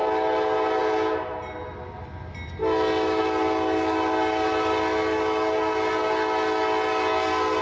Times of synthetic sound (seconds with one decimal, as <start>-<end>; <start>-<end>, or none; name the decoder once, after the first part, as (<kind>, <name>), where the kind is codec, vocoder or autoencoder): none